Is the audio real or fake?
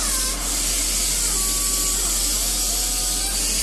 real